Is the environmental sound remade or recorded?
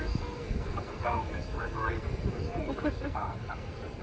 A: remade